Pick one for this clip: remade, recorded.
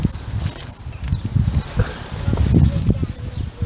recorded